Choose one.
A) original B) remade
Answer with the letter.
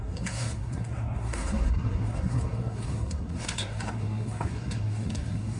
B